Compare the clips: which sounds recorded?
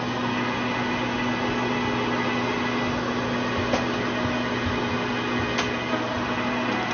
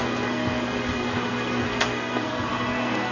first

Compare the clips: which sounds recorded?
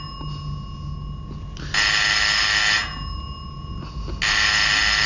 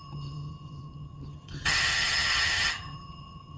first